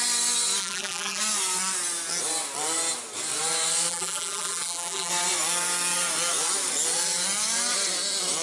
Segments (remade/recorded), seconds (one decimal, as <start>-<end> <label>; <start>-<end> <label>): 0.0-0.6 recorded; 0.6-1.2 remade; 1.2-3.9 recorded; 3.9-5.1 remade; 5.1-8.4 recorded